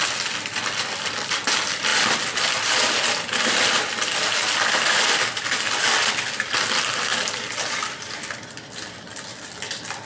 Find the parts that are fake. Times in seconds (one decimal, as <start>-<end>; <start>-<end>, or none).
7.1-7.6